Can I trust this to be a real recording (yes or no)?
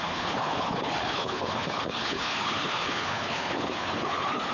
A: no